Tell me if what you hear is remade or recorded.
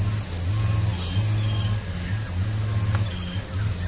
recorded